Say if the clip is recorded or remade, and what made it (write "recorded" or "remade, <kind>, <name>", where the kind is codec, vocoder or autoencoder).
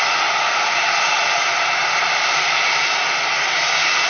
recorded